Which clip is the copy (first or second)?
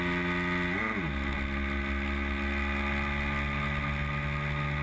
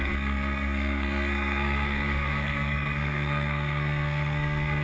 second